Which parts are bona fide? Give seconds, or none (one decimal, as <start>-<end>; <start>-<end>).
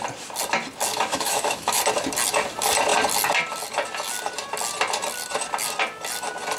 0.0-0.9; 1.8-6.6